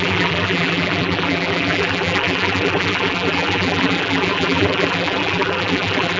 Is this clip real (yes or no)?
no